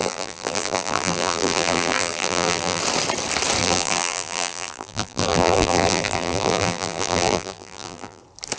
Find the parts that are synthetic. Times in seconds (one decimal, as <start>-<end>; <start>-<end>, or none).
0.0-2.8; 3.6-8.2